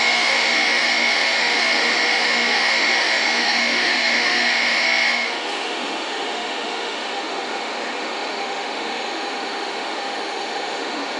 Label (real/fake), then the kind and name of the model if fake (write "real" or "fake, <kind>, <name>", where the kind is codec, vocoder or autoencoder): fake, autoencoder, DAC-VAE